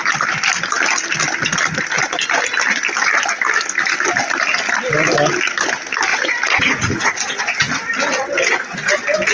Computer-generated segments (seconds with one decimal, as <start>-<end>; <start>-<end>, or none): 6.1-7.4